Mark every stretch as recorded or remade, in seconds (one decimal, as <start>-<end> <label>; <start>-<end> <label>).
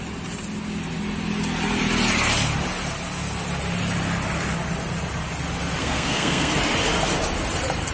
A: 0.0-5.8 recorded; 5.8-6.5 remade; 6.5-7.9 recorded